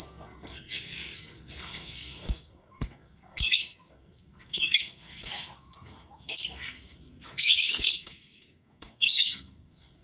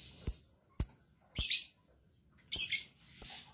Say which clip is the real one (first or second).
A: second